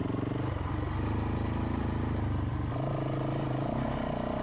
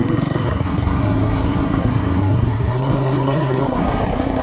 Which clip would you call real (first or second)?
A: first